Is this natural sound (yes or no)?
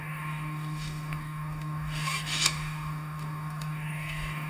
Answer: no